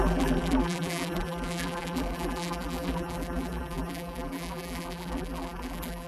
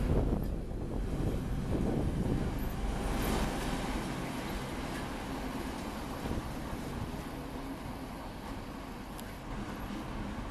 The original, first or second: second